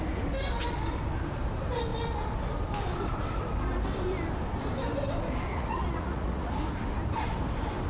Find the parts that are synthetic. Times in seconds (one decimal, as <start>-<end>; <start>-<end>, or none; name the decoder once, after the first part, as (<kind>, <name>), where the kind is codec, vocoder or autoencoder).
5.5-6.5 (vocoder, Vocos)